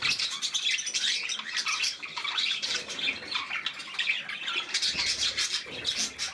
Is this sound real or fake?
real